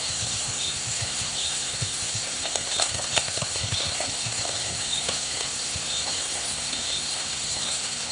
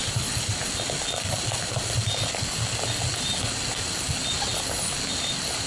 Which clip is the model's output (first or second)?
first